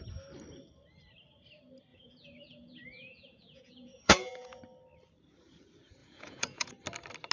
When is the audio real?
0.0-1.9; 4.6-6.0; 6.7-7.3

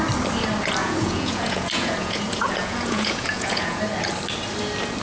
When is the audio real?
0.0-0.8; 3.8-5.0

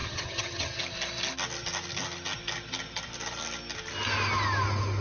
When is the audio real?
0.8-5.0